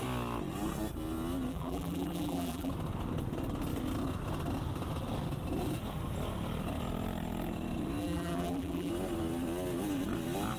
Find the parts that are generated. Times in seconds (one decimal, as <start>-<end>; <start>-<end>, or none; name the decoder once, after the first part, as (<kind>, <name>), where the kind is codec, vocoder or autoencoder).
1.5-2.7 (vocoder, BigVGAN v2); 8.0-8.9